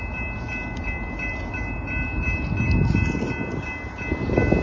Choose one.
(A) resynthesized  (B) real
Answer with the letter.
B